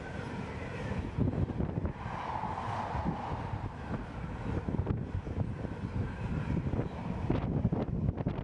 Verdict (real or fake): real